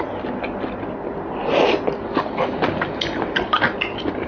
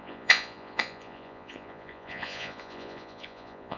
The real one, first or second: first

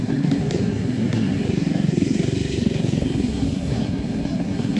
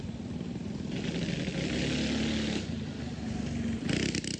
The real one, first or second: second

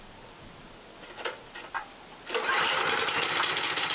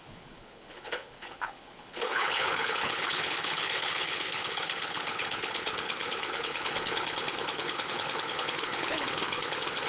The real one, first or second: first